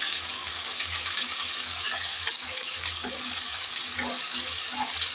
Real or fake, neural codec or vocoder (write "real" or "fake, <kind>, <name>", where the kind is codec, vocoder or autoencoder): fake, codec, DAC